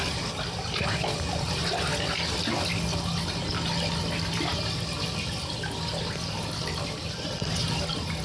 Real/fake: real